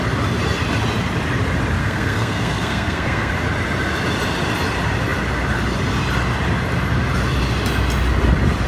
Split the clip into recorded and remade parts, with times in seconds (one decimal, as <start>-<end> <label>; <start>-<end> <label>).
0.0-1.8 recorded; 1.8-3.3 remade; 3.3-8.7 recorded

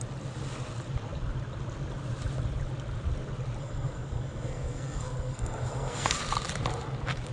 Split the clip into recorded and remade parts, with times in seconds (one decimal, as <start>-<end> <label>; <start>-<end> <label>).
0.0-3.6 recorded; 3.6-6.2 remade; 6.2-7.3 recorded

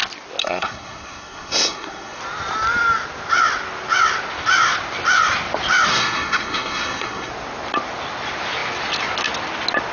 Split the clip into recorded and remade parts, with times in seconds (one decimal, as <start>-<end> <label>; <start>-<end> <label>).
0.0-0.4 recorded; 0.4-2.2 remade; 2.2-5.9 recorded; 5.9-7.3 remade; 7.3-9.9 recorded

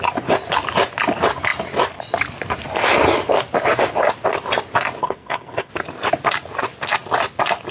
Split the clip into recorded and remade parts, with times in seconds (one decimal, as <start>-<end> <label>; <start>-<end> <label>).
0.0-5.0 recorded; 5.0-5.7 remade; 5.7-7.7 recorded